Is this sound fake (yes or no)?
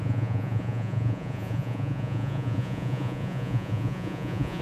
yes